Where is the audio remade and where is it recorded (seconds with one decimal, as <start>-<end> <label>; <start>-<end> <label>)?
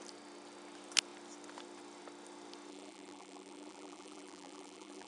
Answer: 0.0-2.7 recorded; 2.7-5.1 remade